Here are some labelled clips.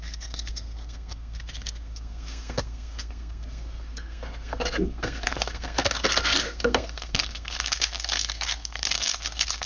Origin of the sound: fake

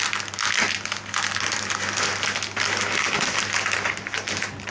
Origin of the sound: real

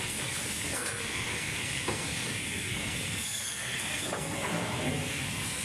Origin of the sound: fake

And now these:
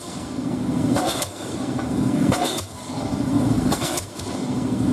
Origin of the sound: fake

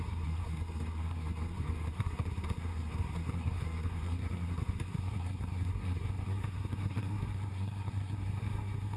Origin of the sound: fake